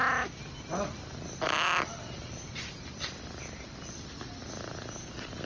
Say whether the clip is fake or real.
real